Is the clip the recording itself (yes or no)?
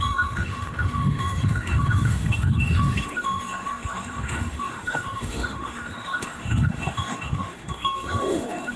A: no